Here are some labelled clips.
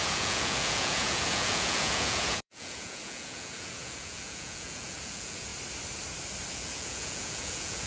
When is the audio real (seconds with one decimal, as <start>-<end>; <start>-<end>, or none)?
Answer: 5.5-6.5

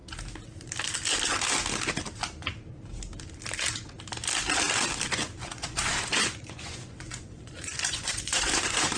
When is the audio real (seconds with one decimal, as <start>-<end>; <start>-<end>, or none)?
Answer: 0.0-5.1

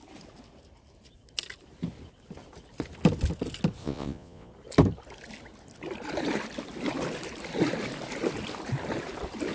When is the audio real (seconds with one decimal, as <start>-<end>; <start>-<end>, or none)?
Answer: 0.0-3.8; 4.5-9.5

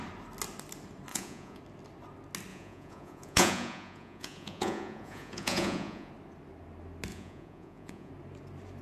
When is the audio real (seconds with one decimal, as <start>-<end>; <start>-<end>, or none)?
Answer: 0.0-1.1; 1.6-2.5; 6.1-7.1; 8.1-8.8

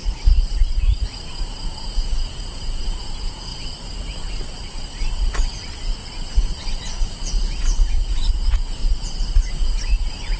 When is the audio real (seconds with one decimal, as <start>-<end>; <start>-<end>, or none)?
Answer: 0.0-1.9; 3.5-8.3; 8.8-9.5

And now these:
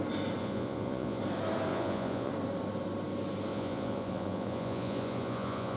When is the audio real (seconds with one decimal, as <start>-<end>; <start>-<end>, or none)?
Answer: 0.0-0.4; 1.2-1.7; 2.3-3.5

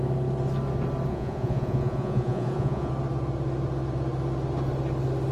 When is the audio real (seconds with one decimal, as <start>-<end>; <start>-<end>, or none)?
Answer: 0.0-1.1; 2.9-5.3

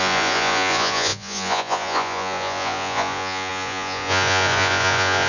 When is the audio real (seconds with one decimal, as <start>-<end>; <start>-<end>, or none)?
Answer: none